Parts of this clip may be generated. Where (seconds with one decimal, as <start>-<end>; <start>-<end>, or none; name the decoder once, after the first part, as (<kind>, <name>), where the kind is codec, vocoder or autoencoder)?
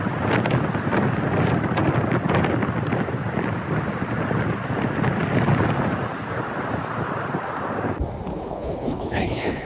8.3-9.7 (codec, HILCodec)